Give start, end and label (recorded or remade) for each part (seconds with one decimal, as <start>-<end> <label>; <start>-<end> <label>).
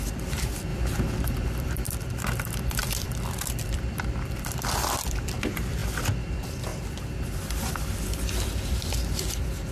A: 0.0-5.8 remade; 5.8-6.3 recorded; 6.3-9.7 remade